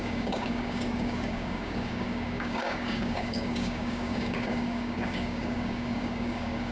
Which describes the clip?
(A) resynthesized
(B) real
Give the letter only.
A